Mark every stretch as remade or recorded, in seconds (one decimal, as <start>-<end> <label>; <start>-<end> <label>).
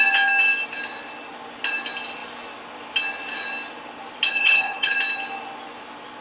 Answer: 0.0-4.3 recorded; 4.3-4.9 remade; 4.9-6.2 recorded